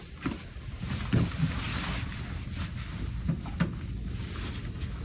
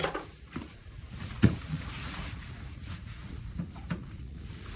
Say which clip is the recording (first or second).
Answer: first